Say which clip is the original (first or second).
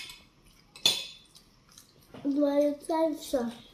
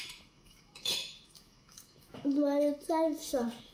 first